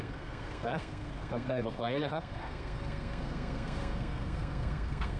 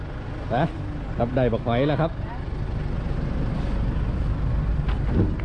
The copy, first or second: first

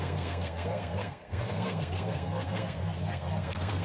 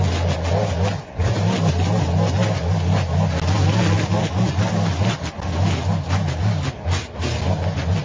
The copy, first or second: first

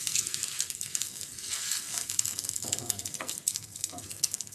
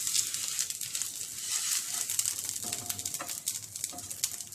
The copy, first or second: first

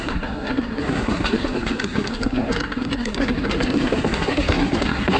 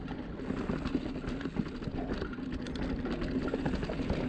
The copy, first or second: first